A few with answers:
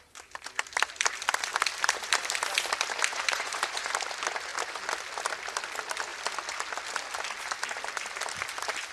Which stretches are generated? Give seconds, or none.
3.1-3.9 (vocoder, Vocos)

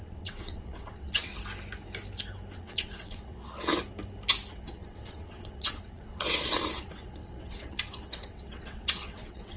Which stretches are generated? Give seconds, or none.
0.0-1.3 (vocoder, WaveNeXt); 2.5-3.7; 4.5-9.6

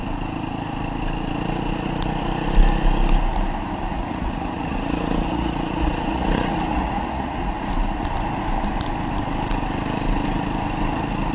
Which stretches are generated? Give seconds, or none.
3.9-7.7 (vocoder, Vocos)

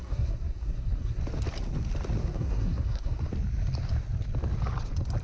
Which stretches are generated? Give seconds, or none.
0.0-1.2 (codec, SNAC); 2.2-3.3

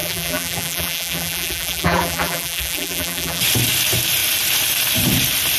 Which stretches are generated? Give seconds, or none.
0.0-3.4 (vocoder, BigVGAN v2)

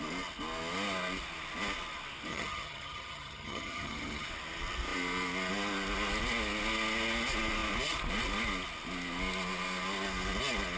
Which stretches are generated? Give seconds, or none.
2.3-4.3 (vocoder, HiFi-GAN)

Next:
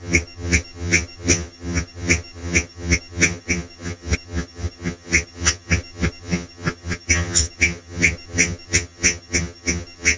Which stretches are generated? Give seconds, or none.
0.0-10.2 (vocoder, HiFi-GAN)